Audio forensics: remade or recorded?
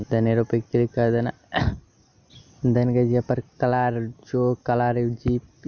recorded